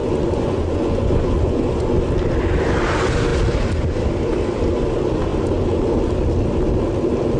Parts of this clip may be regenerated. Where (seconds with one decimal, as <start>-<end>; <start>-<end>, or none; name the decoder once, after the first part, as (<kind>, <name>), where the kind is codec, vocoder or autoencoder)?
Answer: 0.0-2.0 (vocoder, Vocos)